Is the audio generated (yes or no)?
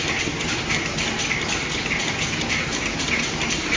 no